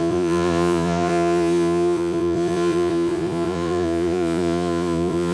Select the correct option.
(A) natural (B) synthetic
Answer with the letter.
B